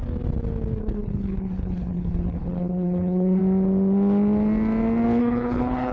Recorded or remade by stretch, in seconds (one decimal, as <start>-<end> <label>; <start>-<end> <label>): 0.0-0.8 recorded; 0.8-3.4 remade; 3.4-5.2 recorded; 5.2-5.9 remade